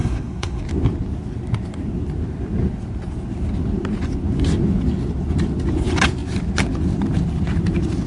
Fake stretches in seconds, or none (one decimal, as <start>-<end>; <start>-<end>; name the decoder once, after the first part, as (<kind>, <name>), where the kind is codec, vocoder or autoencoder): 0.0-0.6 (codec, SNAC)